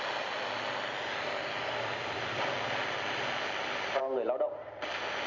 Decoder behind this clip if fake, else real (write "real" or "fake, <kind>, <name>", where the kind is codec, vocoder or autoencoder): real